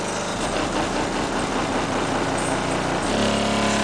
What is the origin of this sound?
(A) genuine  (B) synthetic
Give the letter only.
A